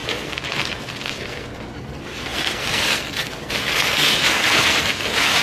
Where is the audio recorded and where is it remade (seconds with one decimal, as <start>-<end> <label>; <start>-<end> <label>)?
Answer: 0.0-5.4 remade